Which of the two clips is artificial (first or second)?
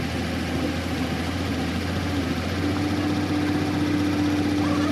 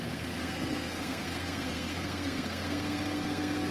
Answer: second